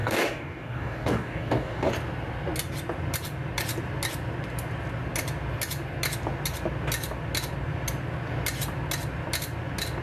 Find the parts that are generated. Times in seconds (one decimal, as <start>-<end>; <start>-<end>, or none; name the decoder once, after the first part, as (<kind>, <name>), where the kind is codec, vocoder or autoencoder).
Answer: 0.0-1.9 (codec, DAC)